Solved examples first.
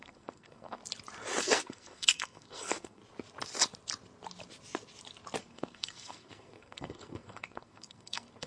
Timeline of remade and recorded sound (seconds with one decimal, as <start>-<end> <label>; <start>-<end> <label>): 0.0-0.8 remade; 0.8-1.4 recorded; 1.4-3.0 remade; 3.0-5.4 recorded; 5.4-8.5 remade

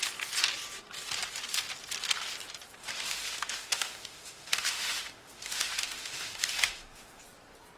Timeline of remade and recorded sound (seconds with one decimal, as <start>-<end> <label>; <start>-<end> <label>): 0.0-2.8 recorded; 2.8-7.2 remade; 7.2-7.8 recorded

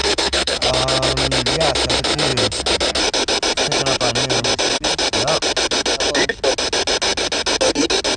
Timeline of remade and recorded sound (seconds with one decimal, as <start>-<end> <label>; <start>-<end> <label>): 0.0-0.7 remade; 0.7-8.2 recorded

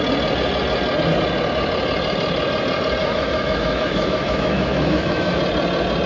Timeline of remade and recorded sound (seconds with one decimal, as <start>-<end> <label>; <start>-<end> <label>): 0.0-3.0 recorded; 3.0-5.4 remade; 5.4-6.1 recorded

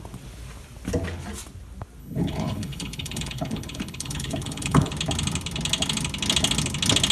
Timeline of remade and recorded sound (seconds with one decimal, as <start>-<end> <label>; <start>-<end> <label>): 0.0-2.0 recorded; 2.0-4.9 remade; 4.9-7.1 recorded

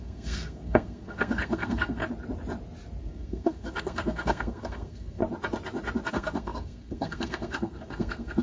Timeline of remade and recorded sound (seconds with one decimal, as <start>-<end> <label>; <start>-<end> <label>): 0.0-2.0 remade; 2.0-3.0 recorded; 3.0-5.2 remade; 5.2-6.1 recorded; 6.1-8.4 remade